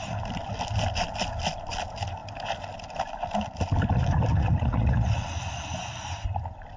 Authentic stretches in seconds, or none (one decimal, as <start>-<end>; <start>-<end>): 0.0-4.3; 5.3-6.8

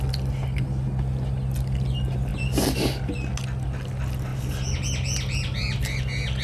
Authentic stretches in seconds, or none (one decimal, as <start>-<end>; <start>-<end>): 0.0-6.4

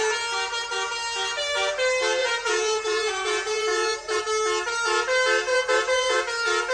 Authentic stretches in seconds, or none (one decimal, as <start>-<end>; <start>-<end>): 0.0-2.2; 4.2-5.5; 6.2-6.7

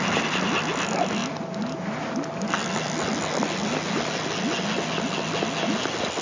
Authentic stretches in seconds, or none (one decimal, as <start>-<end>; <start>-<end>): 0.0-6.2

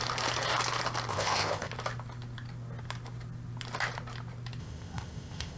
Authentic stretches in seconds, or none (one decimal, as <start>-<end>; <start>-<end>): 0.0-1.1; 1.7-4.6

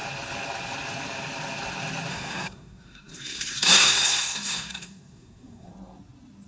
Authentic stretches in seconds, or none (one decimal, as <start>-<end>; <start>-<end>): 0.0-2.1; 5.7-6.5

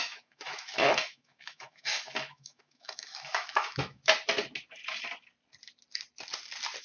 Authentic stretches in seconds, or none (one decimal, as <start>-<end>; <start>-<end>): 4.0-6.8

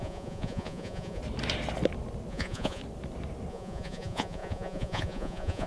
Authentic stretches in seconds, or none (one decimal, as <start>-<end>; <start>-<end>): 1.2-2.3; 2.8-3.5